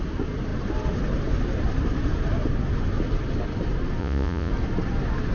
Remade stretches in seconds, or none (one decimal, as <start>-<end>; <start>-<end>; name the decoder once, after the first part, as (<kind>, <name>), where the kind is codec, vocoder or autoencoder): 4.0-4.5 (vocoder, Vocos)